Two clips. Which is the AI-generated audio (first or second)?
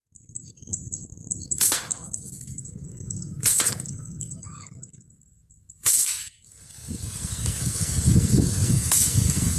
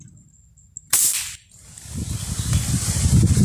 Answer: first